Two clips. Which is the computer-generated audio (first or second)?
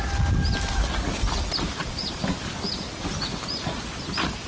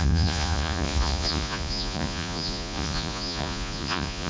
second